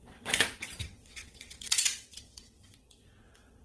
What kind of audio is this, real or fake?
fake